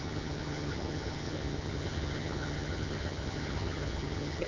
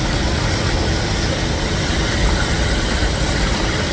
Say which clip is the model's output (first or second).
first